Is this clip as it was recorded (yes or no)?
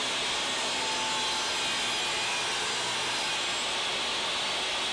yes